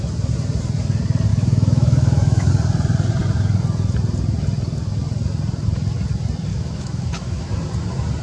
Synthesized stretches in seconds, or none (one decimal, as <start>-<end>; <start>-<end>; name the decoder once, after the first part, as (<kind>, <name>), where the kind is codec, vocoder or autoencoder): 1.3-2.5 (autoencoder, DAC-VAE); 6.5-7.5